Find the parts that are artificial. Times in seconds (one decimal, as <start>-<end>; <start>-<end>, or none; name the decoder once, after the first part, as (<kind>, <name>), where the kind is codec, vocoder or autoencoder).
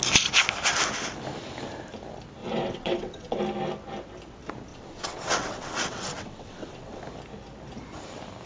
2.4-3.4 (vocoder, WaveNeXt); 4.7-7.0